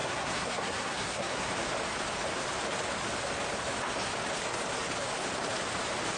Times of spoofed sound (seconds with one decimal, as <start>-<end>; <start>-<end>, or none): 0.0-1.5